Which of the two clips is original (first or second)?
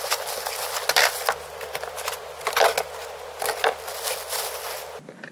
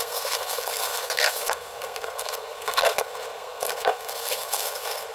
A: first